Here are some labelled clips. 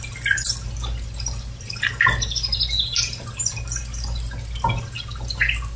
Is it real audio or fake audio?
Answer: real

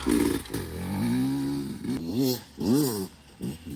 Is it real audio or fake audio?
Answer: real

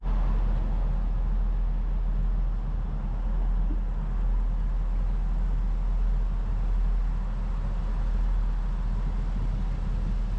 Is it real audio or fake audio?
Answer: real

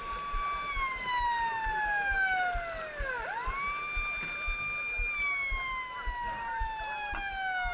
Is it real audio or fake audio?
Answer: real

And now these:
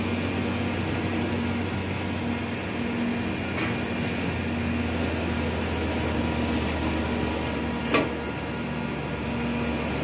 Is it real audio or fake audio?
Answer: real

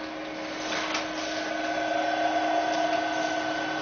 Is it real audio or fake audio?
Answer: real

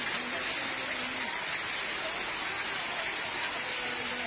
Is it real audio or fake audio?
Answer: real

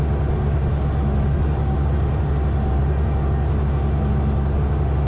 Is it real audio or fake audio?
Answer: real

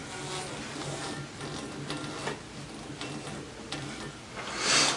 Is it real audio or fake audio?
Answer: real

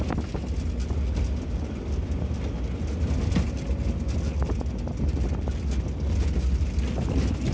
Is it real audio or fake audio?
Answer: real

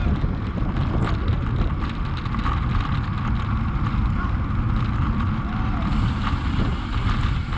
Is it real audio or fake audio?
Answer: real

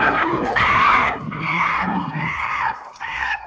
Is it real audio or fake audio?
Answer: fake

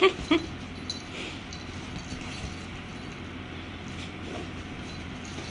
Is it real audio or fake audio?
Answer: real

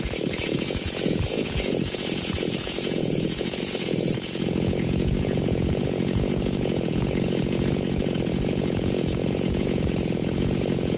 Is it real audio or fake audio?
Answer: fake